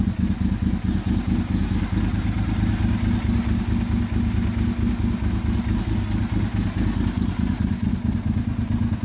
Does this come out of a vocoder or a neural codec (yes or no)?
no